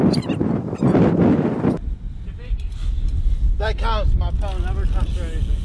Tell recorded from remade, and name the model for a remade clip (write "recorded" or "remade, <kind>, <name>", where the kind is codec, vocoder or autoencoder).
recorded